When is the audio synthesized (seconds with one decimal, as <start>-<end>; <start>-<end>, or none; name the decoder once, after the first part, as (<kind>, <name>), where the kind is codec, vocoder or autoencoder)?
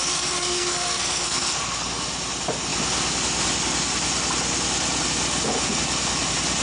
0.0-2.0 (codec, SNAC)